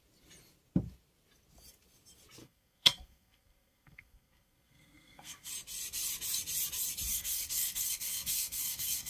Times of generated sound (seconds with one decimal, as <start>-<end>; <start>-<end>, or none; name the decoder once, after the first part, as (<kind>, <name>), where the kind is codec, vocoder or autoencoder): 2.4-5.5 (codec, SNAC); 7.1-9.1